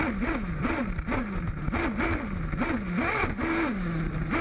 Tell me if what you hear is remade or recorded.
recorded